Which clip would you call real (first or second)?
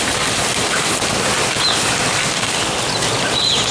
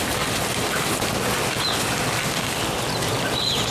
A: second